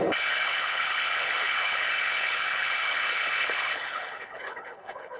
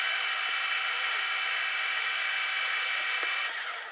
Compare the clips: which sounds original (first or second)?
second